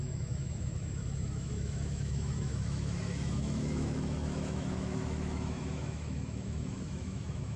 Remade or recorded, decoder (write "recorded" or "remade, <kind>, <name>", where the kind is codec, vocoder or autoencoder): remade, autoencoder, DAC-VAE